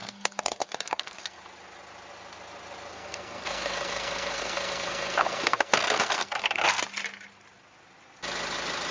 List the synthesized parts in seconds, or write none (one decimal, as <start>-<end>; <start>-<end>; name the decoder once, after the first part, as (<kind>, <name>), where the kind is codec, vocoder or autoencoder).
0.0-1.4 (codec, SNAC); 2.9-6.8